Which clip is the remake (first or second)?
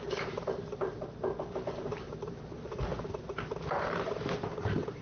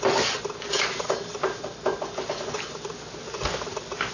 first